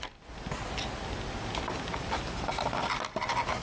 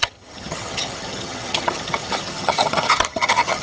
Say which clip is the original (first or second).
first